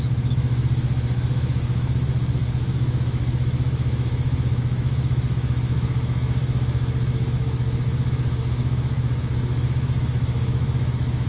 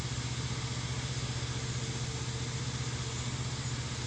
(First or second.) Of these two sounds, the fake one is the first